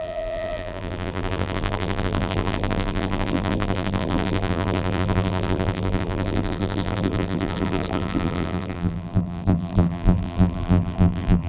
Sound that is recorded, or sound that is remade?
remade